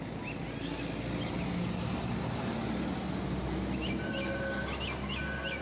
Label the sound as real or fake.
real